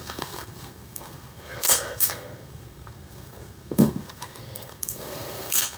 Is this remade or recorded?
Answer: remade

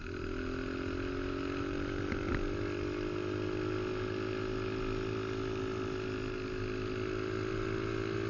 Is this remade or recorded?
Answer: recorded